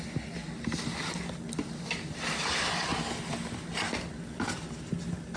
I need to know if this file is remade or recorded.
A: recorded